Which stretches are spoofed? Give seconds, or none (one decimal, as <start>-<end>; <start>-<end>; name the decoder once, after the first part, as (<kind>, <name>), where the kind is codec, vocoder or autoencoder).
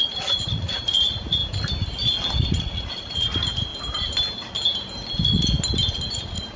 0.0-1.4 (vocoder, Vocos); 2.5-3.7; 6.1-6.6